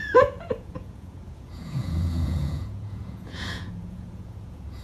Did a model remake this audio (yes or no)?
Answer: yes